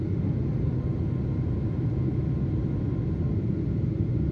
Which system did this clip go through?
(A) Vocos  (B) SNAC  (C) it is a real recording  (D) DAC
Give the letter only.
C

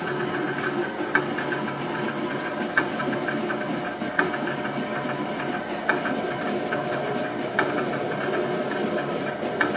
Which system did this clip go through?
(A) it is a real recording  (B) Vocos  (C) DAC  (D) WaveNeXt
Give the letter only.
A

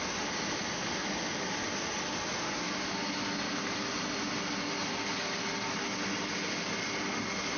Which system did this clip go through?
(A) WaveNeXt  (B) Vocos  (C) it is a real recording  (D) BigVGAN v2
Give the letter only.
C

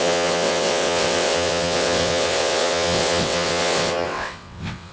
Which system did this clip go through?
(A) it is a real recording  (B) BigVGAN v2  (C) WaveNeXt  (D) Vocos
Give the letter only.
C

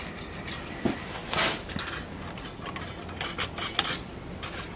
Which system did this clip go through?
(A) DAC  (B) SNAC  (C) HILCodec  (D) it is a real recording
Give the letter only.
D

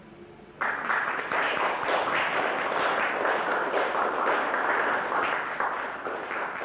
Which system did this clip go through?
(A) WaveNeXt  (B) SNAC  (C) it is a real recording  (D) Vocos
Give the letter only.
C